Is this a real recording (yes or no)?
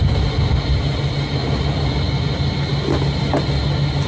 yes